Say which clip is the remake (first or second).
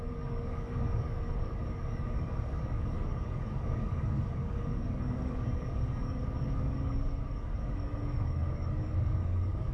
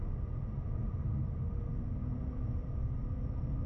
first